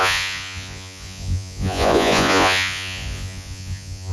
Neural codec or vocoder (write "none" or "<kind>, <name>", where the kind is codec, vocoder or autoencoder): vocoder, Vocos